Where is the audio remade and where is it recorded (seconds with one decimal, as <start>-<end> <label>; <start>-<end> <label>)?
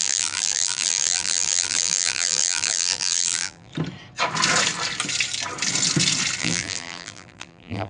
0.0-3.7 remade; 3.7-6.4 recorded; 6.4-7.9 remade